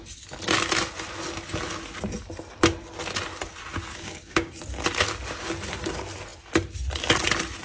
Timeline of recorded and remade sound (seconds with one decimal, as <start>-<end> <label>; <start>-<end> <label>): 0.0-3.9 recorded; 3.9-4.5 remade; 4.5-7.6 recorded